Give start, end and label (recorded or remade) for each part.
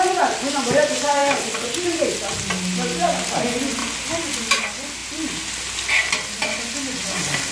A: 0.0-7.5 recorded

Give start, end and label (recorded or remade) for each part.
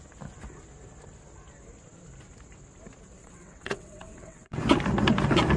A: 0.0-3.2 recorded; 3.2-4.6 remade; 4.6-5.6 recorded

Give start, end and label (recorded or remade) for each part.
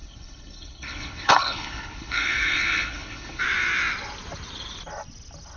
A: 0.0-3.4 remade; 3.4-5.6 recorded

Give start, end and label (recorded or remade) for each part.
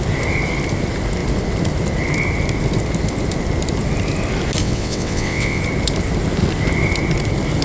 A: 0.0-4.6 recorded; 4.6-5.6 remade; 5.6-7.6 recorded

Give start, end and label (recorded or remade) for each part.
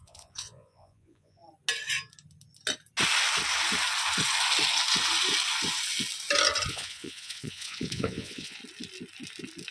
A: 0.0-1.4 remade; 1.4-6.7 recorded; 6.7-8.6 remade; 8.6-9.7 recorded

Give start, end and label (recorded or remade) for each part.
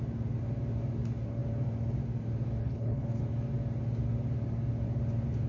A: 0.0-2.6 recorded; 2.6-3.2 remade; 3.2-5.5 recorded